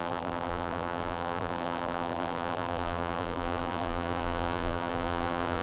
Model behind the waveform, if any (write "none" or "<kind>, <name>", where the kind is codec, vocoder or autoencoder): vocoder, BigVGAN v2